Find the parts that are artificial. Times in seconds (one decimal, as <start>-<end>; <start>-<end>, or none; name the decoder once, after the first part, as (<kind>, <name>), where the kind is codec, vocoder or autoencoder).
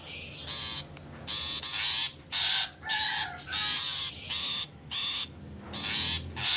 4.4-5.4 (autoencoder, DAC-VAE)